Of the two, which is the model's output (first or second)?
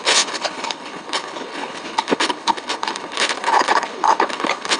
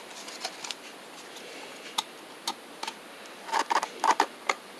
first